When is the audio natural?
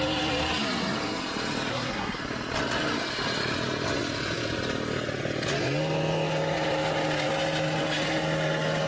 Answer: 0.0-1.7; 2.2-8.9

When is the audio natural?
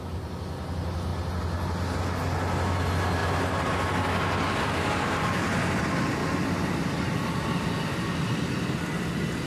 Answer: 0.0-9.5